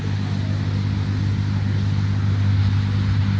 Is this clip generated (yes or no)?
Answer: no